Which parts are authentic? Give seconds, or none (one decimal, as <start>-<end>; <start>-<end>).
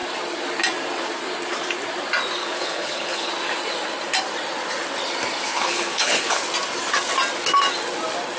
0.0-2.4; 3.3-5.5; 6.4-8.4